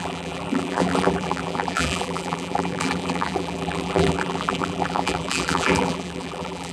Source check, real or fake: fake